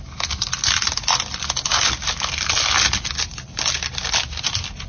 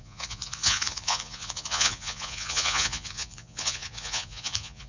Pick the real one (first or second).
first